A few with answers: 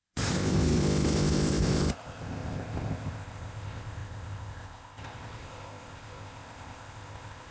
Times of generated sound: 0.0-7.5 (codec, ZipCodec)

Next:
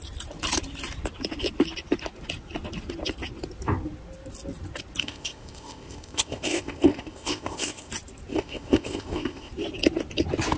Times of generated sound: 5.0-7.9 (codec, ZipCodec); 8.3-9.5

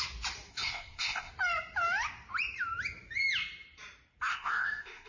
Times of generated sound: 0.5-1.3 (codec, ZipCodec); 4.3-5.1

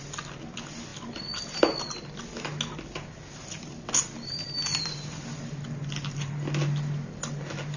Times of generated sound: none

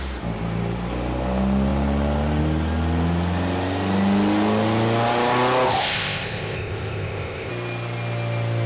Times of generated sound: 5.8-7.5 (codec, ZipCodec)